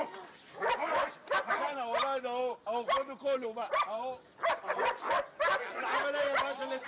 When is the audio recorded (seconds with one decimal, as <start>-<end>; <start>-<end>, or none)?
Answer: 0.0-6.9